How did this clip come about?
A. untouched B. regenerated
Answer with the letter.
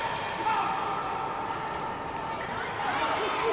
A